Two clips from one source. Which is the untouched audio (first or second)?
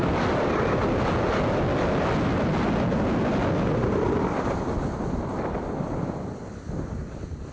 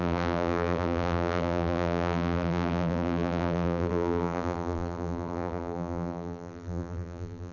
first